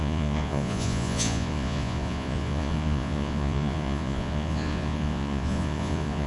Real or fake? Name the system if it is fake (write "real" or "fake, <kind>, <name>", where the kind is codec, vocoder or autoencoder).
fake, vocoder, Vocos